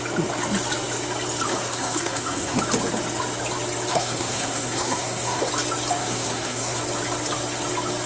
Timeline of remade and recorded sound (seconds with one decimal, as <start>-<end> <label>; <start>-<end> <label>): 0.0-1.5 recorded; 1.5-2.6 remade; 2.6-3.9 recorded; 3.9-5.5 remade; 5.5-6.0 recorded; 6.0-6.8 remade; 6.8-8.1 recorded